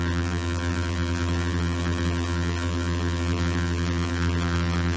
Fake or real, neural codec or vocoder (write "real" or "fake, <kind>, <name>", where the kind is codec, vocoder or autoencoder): fake, vocoder, BigVGAN v2